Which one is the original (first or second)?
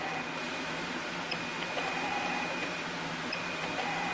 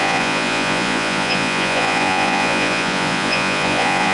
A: first